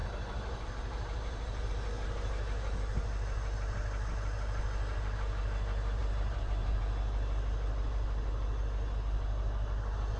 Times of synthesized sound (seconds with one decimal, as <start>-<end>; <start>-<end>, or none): 0.0-1.7; 6.0-6.8